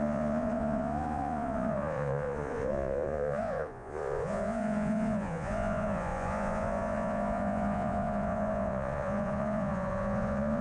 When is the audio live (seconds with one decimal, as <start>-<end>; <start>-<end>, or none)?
none